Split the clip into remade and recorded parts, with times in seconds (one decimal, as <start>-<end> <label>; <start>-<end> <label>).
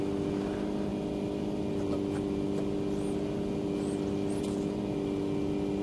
0.0-5.8 recorded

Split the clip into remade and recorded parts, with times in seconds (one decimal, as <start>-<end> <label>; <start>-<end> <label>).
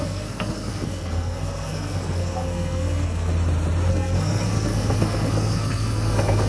0.0-3.3 remade; 3.3-3.9 recorded; 3.9-6.5 remade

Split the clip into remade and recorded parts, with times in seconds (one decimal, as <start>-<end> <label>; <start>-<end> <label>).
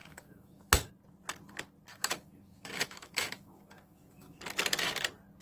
0.0-0.9 remade; 0.9-1.9 recorded; 1.9-4.4 remade; 4.4-5.4 recorded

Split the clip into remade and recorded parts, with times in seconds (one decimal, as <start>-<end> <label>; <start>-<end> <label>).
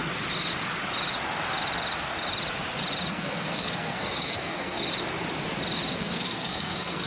0.0-3.1 recorded; 3.1-4.8 remade; 4.8-5.9 recorded; 5.9-7.1 remade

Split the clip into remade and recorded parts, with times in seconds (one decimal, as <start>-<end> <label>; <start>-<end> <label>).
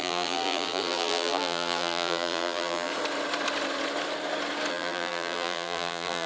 0.0-2.9 remade; 2.9-4.7 recorded; 4.7-6.3 remade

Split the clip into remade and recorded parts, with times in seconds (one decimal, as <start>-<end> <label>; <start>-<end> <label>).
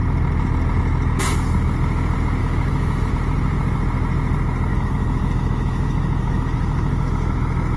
0.0-2.4 recorded; 2.4-3.1 remade; 3.1-4.7 recorded; 4.7-7.8 remade